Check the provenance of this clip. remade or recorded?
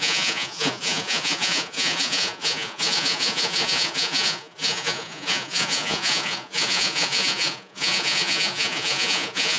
remade